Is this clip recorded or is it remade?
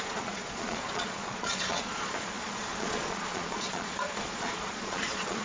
remade